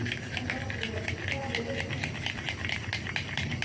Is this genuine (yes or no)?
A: yes